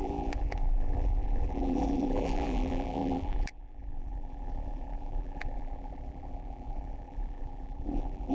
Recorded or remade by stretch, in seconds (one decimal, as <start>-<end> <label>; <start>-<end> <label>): 0.0-8.3 remade